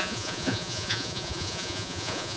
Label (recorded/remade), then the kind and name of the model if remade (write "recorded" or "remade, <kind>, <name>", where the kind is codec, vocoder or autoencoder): remade, vocoder, Vocos